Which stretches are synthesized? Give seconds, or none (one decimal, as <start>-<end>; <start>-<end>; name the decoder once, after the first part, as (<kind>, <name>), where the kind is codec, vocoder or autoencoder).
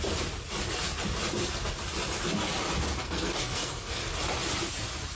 3.0-4.0 (codec, SNAC)